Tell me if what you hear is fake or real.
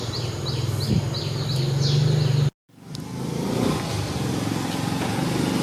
real